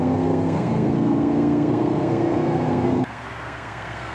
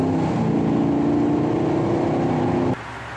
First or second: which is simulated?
first